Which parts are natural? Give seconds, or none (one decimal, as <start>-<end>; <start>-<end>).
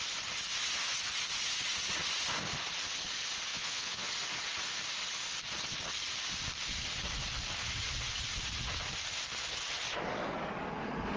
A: 0.0-3.5; 4.1-11.2